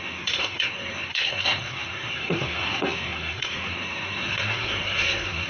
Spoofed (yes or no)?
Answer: yes